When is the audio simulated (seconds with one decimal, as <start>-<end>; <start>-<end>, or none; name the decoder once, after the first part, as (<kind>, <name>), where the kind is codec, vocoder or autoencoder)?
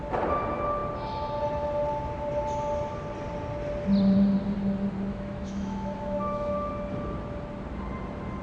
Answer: 5.1-6.7 (autoencoder, DAC-VAE)